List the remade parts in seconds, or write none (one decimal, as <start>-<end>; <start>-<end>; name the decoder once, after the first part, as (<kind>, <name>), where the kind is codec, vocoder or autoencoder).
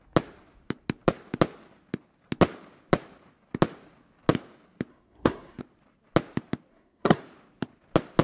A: 4.9-5.6 (codec, SNAC); 6.7-7.2